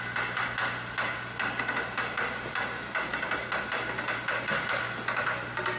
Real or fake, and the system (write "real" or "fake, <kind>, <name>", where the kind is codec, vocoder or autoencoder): real